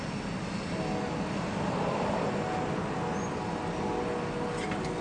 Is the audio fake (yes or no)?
no